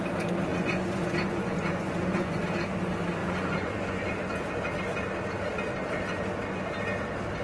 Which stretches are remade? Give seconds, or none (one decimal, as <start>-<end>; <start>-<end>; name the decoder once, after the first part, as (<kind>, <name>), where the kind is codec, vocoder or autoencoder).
0.5-2.4 (vocoder, Vocos); 3.2-4.1